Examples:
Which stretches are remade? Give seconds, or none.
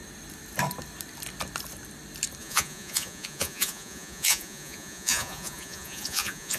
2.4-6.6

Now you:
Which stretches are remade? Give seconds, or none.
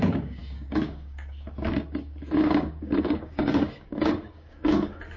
0.0-5.2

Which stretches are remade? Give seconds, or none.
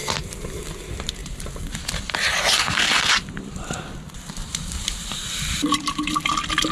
0.0-0.6; 1.2-2.8; 4.4-6.1